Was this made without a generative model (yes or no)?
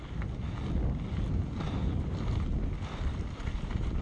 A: yes